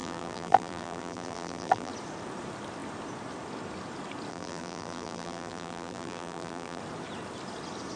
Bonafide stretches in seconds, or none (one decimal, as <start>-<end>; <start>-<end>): 1.9-4.3; 6.8-8.0